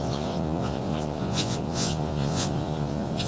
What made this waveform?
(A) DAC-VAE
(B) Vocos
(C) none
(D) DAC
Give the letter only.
B